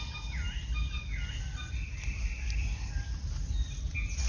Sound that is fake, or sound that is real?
real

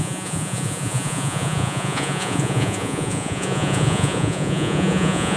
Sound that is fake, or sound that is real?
fake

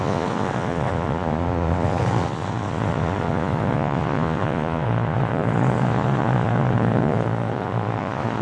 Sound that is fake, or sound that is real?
fake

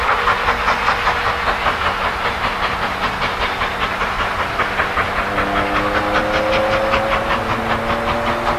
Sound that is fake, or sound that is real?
real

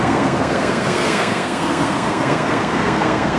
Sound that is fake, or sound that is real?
fake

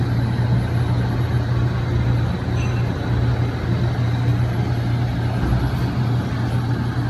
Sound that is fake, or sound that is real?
real